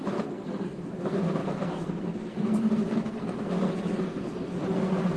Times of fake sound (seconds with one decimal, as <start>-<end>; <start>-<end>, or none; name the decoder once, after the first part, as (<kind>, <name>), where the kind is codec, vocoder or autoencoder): 0.0-5.2 (codec, SNAC)